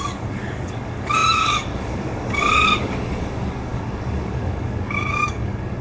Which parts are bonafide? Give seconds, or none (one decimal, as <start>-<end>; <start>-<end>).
none